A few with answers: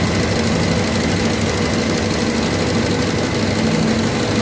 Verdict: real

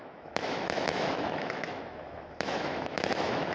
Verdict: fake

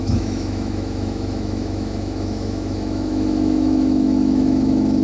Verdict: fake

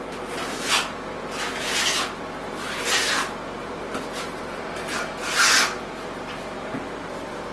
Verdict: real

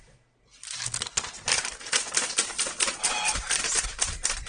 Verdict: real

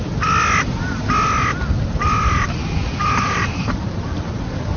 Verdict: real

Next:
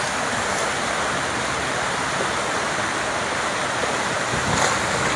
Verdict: real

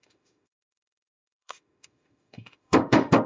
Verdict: fake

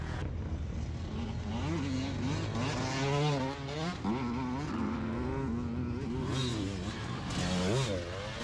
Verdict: real